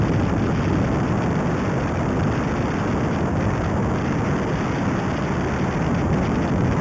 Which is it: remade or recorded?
recorded